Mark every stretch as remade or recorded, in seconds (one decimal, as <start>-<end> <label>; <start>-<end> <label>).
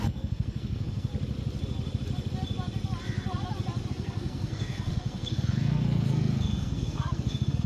0.0-1.1 remade; 1.1-3.9 recorded; 3.9-7.7 remade